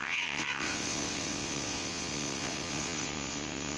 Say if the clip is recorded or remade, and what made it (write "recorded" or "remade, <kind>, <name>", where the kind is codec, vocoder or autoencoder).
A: remade, vocoder, WaveNeXt